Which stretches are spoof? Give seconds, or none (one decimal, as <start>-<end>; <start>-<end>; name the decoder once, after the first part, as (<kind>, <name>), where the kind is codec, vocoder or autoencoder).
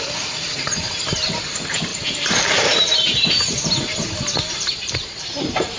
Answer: 0.0-5.8 (vocoder, BigVGAN v2)